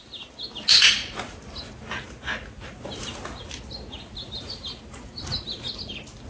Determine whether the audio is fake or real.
real